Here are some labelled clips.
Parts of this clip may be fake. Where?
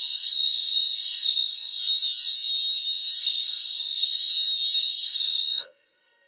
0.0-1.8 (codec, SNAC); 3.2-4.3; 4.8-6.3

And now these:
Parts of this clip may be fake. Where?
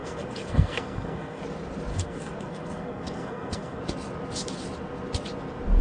0.0-1.4 (codec, SNAC); 1.9-3.8